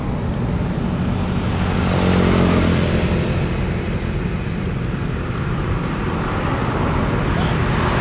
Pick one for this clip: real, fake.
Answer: real